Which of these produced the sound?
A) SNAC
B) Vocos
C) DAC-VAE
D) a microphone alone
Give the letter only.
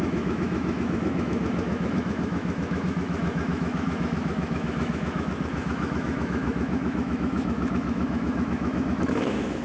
C